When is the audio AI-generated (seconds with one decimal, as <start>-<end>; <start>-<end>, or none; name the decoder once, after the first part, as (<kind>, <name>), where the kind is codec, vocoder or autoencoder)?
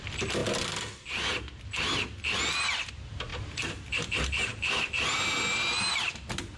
none